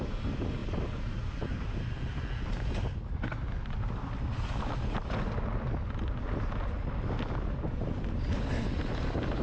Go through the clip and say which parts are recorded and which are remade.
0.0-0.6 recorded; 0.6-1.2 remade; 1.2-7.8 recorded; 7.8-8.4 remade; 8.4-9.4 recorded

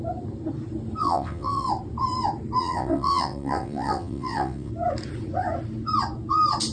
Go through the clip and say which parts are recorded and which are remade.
0.0-1.0 recorded; 1.0-1.7 remade; 1.7-2.6 recorded; 2.6-4.7 remade; 4.7-6.7 recorded